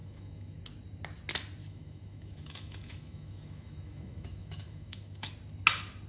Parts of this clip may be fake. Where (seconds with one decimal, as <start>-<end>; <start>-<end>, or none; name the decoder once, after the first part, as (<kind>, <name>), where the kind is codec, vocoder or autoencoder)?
0.0-0.6 (autoencoder, DAC-VAE); 1.6-5.3

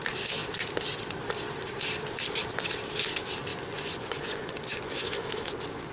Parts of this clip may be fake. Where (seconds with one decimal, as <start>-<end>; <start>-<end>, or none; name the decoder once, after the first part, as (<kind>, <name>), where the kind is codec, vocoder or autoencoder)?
3.5-5.9 (vocoder, Vocos)

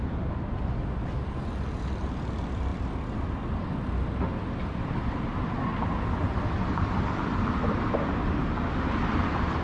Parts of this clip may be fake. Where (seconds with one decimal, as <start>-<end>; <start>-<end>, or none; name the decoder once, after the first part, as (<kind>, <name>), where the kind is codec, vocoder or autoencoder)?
none

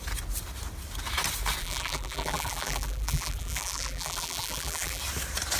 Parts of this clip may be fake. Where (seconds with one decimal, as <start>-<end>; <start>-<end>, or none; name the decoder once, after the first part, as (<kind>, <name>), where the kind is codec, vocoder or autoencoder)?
1.6-5.0 (vocoder, BigVGAN v2)

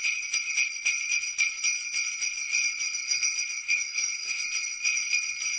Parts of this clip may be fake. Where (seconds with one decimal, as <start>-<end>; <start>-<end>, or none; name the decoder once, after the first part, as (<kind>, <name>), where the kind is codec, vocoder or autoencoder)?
3.6-4.4 (codec, SNAC)

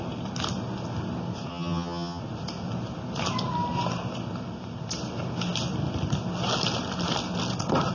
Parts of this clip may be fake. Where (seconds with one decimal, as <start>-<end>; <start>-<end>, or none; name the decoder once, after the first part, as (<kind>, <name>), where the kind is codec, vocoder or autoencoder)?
1.5-2.2 (vocoder, HiFi-GAN)

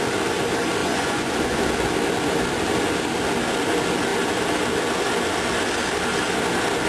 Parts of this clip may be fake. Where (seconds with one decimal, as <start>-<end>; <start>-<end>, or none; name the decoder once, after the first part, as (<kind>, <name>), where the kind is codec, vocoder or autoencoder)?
0.8-1.6 (vocoder, Vocos)